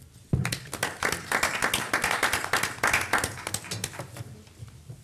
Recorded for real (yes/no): yes